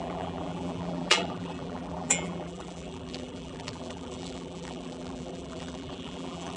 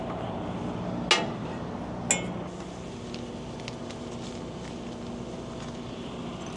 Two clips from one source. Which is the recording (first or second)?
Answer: second